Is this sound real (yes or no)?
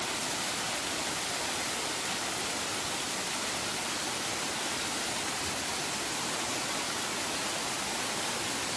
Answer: yes